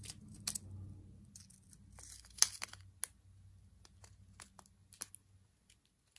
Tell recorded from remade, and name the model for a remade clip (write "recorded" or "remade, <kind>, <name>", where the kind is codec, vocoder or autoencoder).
recorded